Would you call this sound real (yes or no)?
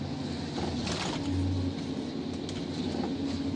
yes